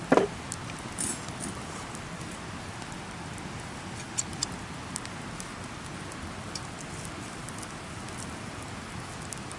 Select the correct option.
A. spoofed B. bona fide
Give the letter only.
B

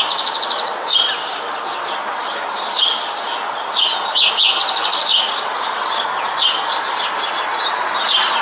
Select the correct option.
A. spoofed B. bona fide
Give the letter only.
B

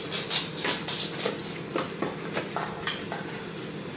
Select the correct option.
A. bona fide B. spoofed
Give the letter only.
A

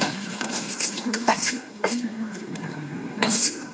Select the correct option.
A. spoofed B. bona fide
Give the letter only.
A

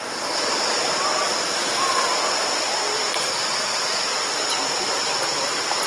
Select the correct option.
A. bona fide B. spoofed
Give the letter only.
A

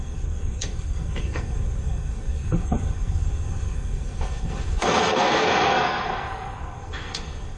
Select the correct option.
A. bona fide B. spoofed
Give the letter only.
B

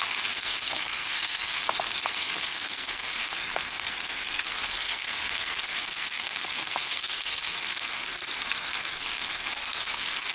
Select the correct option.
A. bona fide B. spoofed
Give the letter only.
B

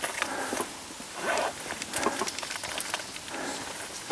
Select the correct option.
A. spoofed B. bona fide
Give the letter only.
B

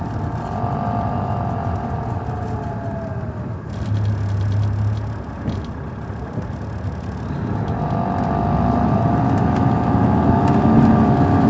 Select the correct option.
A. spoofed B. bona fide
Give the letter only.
B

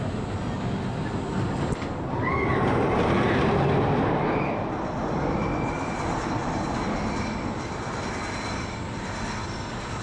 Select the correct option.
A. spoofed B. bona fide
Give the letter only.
B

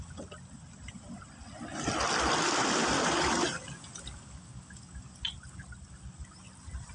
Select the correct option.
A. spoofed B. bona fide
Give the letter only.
B